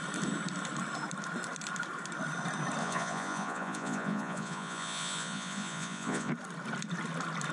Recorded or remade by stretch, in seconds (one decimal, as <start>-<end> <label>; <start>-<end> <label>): 0.0-2.8 recorded; 2.8-6.3 remade; 6.3-7.5 recorded